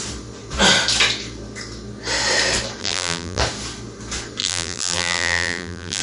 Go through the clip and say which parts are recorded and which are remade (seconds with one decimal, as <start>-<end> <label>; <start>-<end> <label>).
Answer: 0.0-2.8 recorded; 2.8-3.4 remade; 3.4-4.4 recorded; 4.4-6.0 remade